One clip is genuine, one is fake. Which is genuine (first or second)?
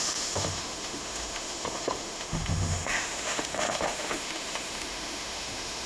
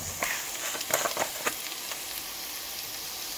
second